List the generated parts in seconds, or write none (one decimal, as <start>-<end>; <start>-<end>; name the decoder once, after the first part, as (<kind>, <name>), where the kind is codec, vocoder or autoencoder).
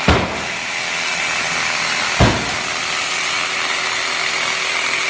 none